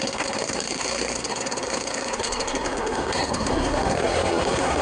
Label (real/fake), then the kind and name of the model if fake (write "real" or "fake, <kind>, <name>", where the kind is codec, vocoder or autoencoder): fake, codec, SNAC